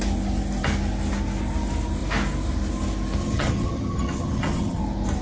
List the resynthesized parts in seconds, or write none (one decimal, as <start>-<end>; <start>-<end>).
3.2-4.8

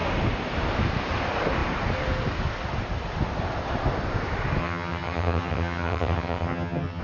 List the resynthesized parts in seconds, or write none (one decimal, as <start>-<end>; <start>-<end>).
4.6-7.0

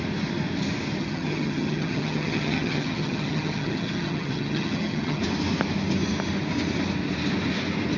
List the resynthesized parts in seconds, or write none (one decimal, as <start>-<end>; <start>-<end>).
1.0-5.2

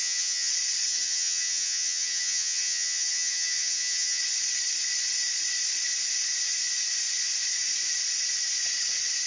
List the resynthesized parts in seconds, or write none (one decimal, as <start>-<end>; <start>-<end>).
0.0-0.5; 0.9-4.2

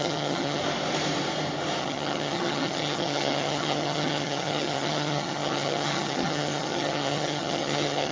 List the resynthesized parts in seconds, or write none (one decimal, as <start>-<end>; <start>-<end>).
0.0-0.6; 1.8-8.1